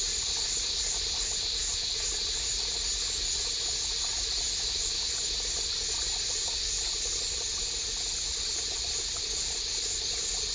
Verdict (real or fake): real